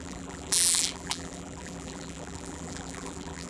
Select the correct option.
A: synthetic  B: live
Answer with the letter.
A